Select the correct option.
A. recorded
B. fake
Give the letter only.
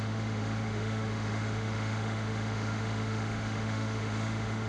B